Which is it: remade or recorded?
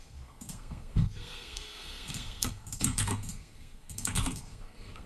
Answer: remade